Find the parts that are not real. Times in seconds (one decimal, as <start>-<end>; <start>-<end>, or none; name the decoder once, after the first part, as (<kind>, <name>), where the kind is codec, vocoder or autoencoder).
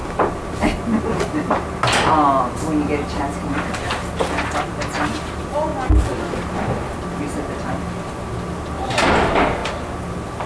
none